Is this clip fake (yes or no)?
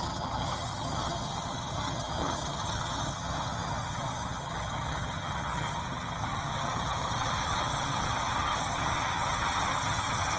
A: yes